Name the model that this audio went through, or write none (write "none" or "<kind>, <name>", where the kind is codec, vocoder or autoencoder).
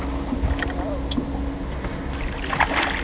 none